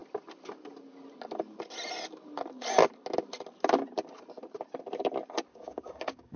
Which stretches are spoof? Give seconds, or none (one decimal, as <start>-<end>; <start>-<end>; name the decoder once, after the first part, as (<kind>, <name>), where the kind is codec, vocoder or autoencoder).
5.5-6.4 (codec, DAC)